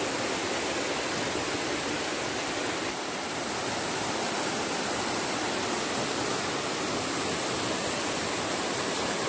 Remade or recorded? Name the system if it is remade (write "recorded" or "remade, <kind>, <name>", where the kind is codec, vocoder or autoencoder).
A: recorded